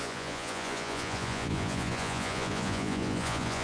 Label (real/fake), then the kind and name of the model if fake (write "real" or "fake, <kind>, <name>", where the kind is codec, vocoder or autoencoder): fake, vocoder, Vocos